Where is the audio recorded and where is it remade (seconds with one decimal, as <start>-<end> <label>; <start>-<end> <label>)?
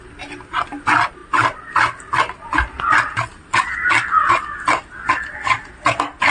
0.0-6.3 recorded